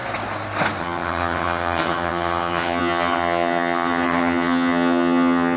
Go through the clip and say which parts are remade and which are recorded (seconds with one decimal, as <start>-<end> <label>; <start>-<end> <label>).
0.0-0.8 recorded; 0.8-5.6 remade